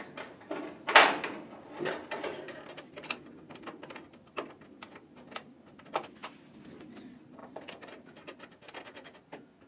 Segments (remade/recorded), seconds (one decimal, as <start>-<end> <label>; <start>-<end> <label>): 0.0-7.4 recorded; 7.4-8.1 remade; 8.1-9.7 recorded